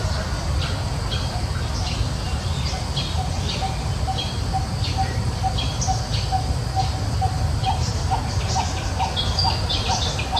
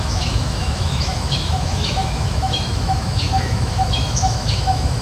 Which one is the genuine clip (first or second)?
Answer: first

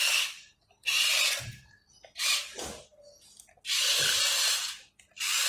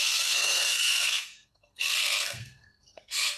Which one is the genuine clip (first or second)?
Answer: first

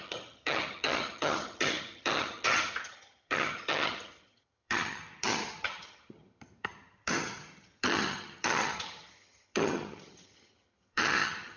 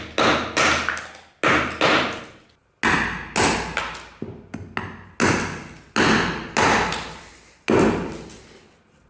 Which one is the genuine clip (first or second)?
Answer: second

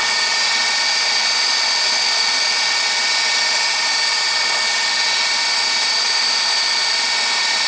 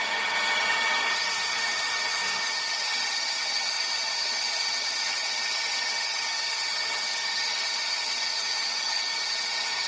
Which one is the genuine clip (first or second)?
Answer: first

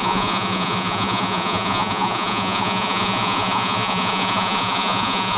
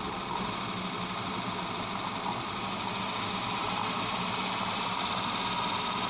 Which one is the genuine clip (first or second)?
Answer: second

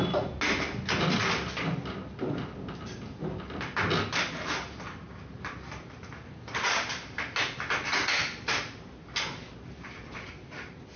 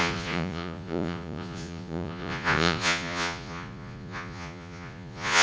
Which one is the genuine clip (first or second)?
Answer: first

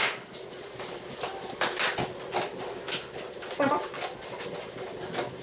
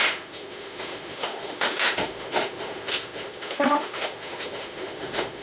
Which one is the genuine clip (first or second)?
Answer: first